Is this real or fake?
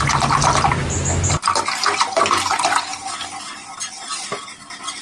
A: real